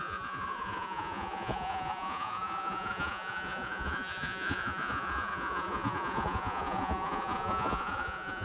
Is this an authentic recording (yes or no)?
no